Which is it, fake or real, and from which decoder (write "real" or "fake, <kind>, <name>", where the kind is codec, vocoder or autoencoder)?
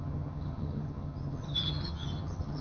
fake, vocoder, HiFi-GAN